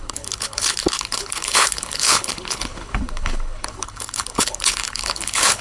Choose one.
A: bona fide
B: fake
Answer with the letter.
B